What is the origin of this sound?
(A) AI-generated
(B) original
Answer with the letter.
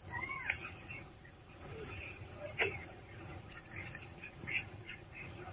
A